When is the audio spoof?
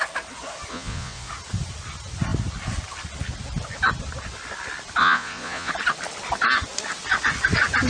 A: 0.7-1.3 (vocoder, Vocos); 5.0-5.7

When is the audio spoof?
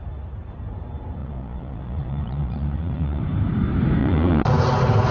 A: 1.2-3.2 (vocoder, Vocos); 4.0-4.5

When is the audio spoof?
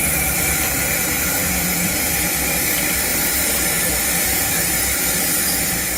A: 0.0-3.1 (vocoder, BigVGAN v2); 4.1-6.0